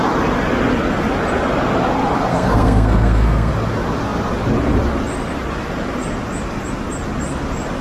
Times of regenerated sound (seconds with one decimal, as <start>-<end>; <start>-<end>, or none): 2.3-3.5